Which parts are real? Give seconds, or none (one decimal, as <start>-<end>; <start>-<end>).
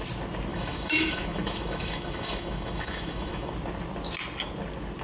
0.0-0.5; 3.5-5.0